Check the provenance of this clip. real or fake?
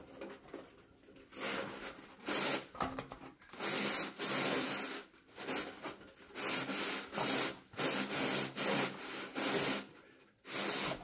real